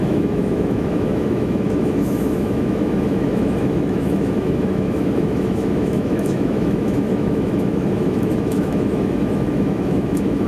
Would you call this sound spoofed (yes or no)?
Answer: yes